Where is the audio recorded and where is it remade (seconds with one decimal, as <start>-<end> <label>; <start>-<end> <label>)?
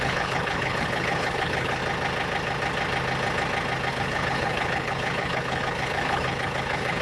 0.0-1.8 remade; 1.8-3.9 recorded; 3.9-7.0 remade